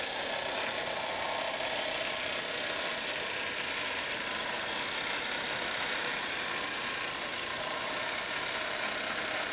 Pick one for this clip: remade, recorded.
recorded